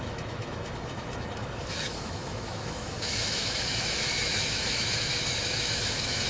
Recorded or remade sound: remade